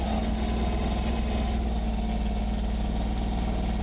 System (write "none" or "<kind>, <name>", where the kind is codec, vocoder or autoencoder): none